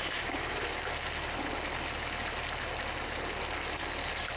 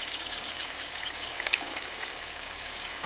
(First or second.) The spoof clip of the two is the second